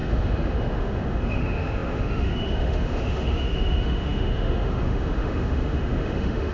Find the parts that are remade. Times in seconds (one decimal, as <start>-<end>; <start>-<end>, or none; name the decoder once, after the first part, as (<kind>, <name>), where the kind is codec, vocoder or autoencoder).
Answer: 0.0-6.5 (autoencoder, DAC-VAE)